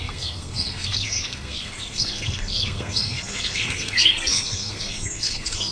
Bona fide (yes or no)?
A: no